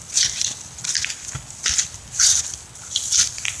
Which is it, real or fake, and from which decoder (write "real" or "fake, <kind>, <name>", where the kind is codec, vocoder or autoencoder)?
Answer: real